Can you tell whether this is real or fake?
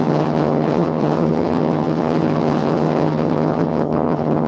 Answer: fake